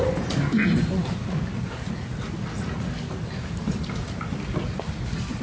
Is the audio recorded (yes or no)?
yes